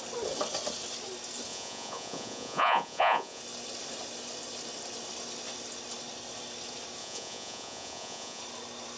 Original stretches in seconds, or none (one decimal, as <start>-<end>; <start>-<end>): 0.0-1.5; 3.4-7.0; 8.4-9.0